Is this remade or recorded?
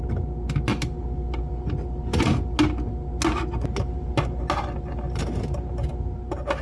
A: recorded